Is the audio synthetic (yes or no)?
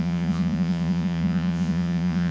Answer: yes